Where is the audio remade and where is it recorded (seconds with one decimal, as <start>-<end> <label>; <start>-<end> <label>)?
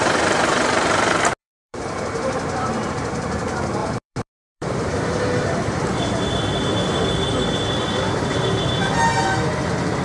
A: 0.0-1.4 recorded; 1.4-2.9 remade; 2.9-3.8 recorded; 3.8-6.3 remade; 6.3-10.0 recorded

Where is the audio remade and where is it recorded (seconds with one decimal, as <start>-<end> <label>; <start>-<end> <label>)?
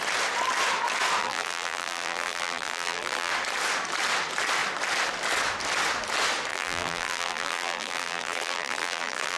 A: 0.0-1.2 recorded; 1.2-3.3 remade; 3.3-6.5 recorded; 6.5-9.4 remade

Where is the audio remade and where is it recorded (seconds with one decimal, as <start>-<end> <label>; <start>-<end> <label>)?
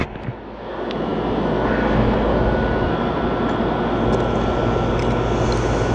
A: 0.0-5.9 recorded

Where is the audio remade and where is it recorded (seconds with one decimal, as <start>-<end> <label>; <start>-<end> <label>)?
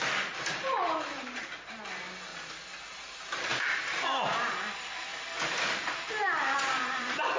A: 0.0-2.3 remade; 2.3-3.0 recorded; 3.0-5.1 remade; 5.1-5.8 recorded; 5.8-7.4 remade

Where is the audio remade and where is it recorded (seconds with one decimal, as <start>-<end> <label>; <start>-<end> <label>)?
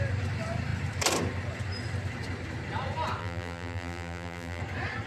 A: 0.0-3.2 recorded; 3.2-4.6 remade; 4.6-5.1 recorded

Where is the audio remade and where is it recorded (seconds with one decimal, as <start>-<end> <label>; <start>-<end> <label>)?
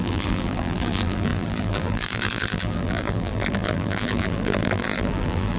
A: 0.0-5.6 remade